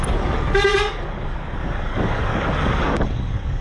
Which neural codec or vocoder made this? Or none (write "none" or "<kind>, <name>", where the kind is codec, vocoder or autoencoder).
codec, DAC